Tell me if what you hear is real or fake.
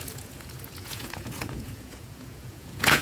fake